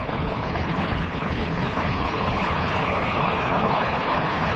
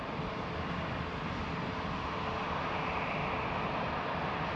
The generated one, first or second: first